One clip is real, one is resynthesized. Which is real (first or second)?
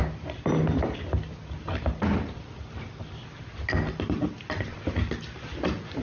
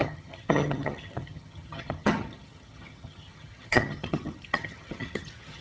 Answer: first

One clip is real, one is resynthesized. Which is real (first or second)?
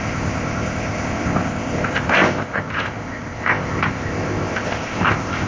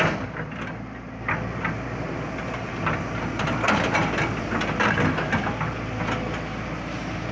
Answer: second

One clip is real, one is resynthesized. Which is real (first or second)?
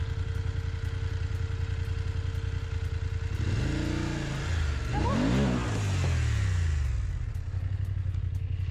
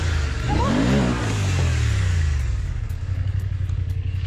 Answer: first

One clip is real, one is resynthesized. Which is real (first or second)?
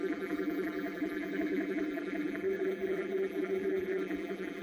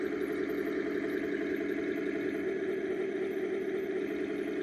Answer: second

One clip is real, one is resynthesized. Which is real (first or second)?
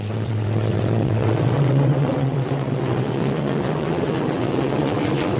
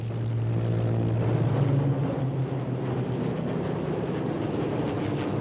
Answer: second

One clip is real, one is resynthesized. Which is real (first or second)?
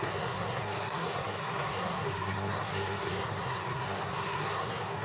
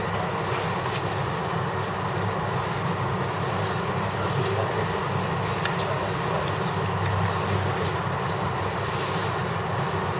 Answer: second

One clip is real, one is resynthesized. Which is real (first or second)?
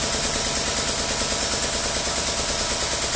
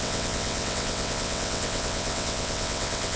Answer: first